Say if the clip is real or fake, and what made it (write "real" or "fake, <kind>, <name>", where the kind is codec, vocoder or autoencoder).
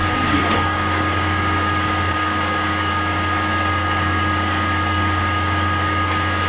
fake, codec, DAC